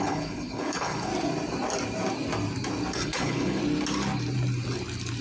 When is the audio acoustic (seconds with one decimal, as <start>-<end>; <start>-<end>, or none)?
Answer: 1.1-2.9; 3.6-5.2